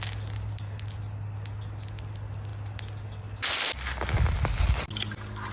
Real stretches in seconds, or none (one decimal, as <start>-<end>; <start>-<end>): 0.0-5.5